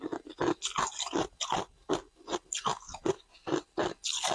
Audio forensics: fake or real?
real